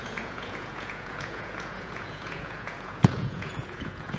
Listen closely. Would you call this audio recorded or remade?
remade